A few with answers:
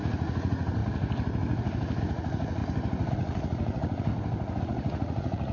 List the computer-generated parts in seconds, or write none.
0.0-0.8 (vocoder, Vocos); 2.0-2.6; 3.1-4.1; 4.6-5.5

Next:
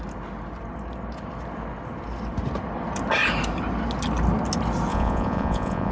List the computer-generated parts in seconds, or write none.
4.9-5.9 (vocoder, Vocos)

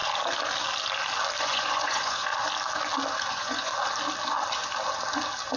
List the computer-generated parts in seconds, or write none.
1.4-2.3 (vocoder, Vocos); 3.3-3.7

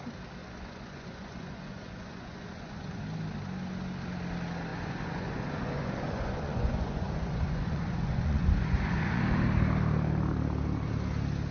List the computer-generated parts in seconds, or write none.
0.4-3.0 (vocoder, Vocos); 4.7-9.2

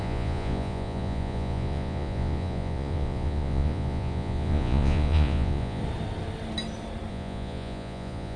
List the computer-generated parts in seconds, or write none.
0.0-5.8 (vocoder, Vocos); 7.1-8.4

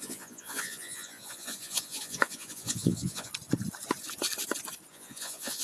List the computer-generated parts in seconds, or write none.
0.0-3.3 (vocoder, Vocos); 4.9-5.6

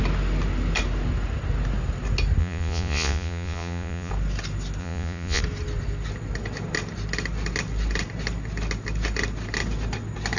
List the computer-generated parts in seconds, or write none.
2.4-4.1 (vocoder, Vocos); 4.8-5.4

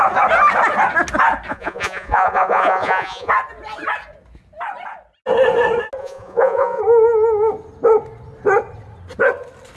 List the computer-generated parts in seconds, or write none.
1.5-3.3 (vocoder, Vocos); 6.0-6.8